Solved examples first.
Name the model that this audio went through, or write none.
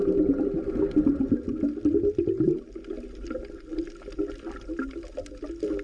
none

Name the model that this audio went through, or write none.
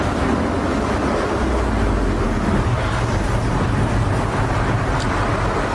none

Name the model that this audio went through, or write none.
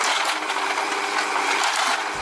none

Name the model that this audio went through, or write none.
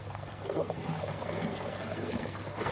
codec, SNAC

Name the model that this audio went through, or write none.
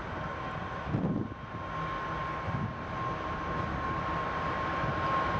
none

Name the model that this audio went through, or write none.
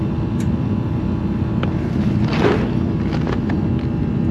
none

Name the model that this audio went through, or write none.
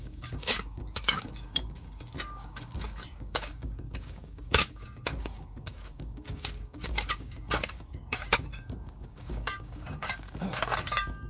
codec, DAC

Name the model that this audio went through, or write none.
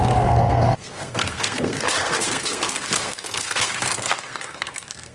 codec, SNAC